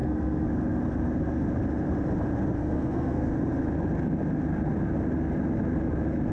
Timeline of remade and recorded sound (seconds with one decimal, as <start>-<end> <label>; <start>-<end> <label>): 0.0-0.5 remade; 0.5-2.6 recorded; 2.6-3.3 remade; 3.3-6.3 recorded